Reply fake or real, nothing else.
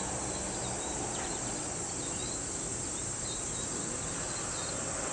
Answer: real